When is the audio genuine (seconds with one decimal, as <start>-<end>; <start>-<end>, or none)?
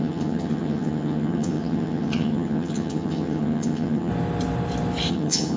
4.1-5.1